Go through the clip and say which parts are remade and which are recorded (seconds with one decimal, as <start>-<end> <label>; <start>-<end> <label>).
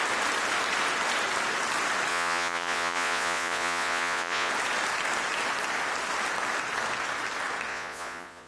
0.0-2.1 recorded; 2.1-4.5 remade; 4.5-7.7 recorded; 7.7-8.5 remade